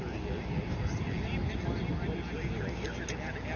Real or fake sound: real